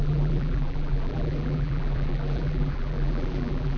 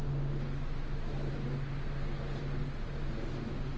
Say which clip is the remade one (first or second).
first